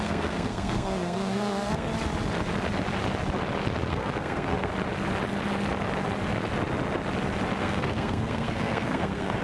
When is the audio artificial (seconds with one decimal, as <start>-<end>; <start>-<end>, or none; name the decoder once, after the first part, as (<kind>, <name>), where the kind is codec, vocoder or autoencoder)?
0.0-1.9 (codec, SNAC); 3.9-4.7; 7.6-9.4